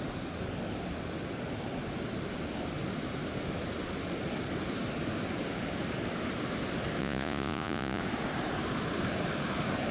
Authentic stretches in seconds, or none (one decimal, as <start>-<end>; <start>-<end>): 0.0-7.0; 8.0-9.9

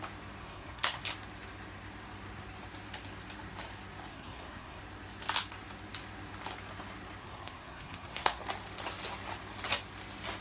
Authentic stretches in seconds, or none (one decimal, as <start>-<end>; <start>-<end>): 0.0-0.4; 1.0-4.1; 4.8-7.2; 8.4-10.4

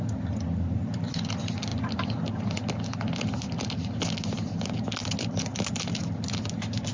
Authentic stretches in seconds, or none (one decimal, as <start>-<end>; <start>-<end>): 0.0-6.9

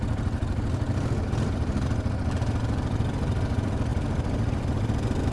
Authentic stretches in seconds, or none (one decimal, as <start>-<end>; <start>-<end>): 0.0-5.3

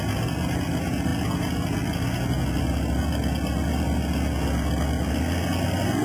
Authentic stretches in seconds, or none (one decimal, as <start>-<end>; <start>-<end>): 0.0-6.0

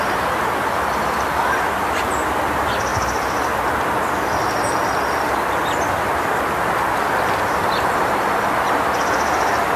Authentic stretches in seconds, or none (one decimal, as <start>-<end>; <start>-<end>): 0.0-9.8

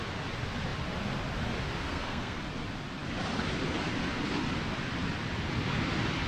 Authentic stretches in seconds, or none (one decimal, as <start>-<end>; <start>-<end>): 0.0-1.8; 2.4-6.3